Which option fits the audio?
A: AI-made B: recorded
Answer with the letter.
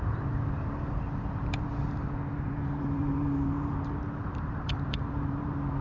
A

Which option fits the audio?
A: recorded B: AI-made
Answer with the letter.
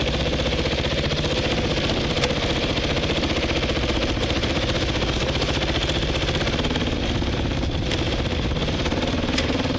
B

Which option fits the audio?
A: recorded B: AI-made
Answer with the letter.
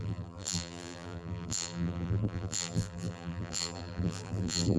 B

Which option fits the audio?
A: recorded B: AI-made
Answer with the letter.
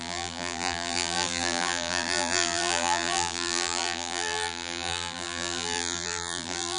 B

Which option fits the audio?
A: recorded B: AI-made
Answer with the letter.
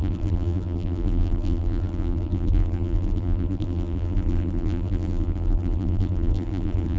B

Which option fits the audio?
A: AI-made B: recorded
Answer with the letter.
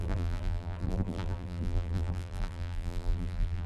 A